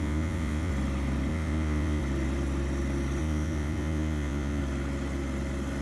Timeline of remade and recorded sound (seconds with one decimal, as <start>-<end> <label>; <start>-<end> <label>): 0.0-0.7 remade; 0.7-1.3 recorded; 1.3-2.0 remade; 2.0-3.2 recorded; 3.2-4.6 remade; 4.6-5.8 recorded